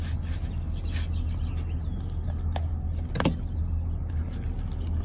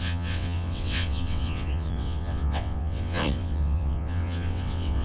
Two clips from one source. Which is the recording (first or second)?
first